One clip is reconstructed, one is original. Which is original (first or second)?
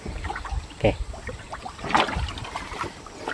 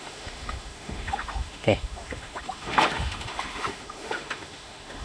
first